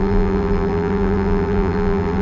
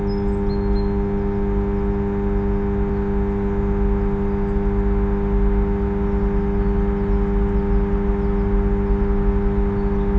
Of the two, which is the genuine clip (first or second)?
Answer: second